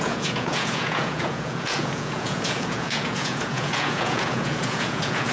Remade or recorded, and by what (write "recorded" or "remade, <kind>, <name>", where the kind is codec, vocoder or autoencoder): remade, vocoder, Vocos